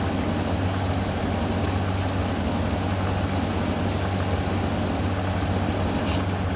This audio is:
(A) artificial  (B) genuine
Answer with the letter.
B